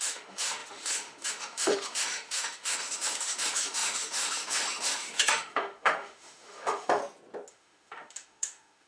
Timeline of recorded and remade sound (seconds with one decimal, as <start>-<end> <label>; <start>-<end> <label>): 0.0-7.0 remade; 7.0-7.5 recorded; 7.5-8.9 remade

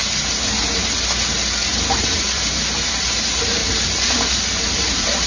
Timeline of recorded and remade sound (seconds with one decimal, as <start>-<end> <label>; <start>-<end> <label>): 0.0-2.0 recorded; 2.0-3.6 remade; 3.6-4.8 recorded; 4.8-5.3 remade

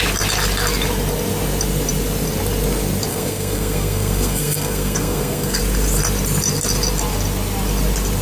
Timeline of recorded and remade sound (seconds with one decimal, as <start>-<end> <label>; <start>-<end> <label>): 0.0-3.1 recorded; 3.1-5.6 remade; 5.6-8.2 recorded

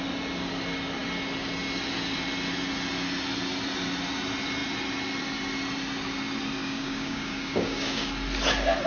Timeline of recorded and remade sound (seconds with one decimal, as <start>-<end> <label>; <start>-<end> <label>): 0.0-6.6 recorded; 6.6-8.1 remade; 8.1-8.9 recorded

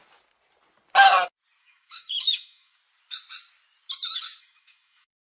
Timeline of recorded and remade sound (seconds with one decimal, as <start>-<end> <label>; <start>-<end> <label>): 0.0-1.6 recorded; 1.6-2.8 remade; 2.8-4.4 recorded; 4.4-5.3 remade

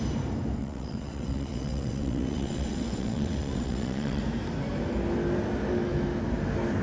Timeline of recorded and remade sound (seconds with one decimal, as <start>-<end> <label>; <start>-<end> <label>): 0.0-0.6 recorded; 0.6-4.2 remade; 4.2-6.8 recorded